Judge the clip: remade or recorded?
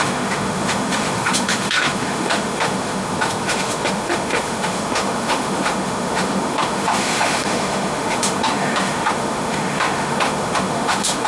remade